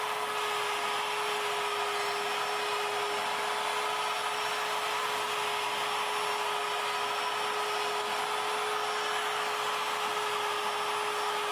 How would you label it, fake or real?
real